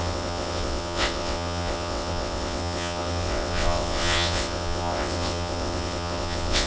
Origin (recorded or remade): remade